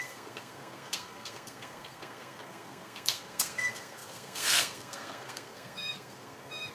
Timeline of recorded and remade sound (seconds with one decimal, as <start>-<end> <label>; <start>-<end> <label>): 0.0-6.7 remade